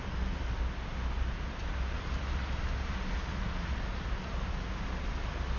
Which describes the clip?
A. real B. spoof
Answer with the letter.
A